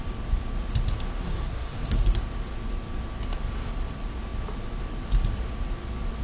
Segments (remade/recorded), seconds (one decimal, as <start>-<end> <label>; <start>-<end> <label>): 0.0-1.2 recorded; 1.2-2.0 remade; 2.0-6.2 recorded